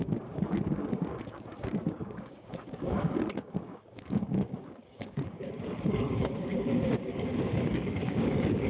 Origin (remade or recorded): remade